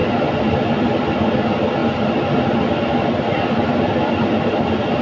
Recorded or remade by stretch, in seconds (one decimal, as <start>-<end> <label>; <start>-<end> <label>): 0.0-5.0 recorded